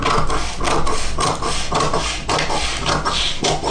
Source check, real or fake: real